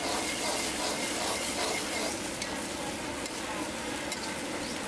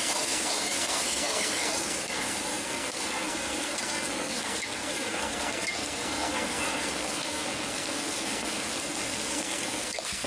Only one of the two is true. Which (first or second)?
first